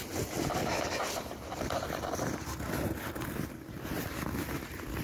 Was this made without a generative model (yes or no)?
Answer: yes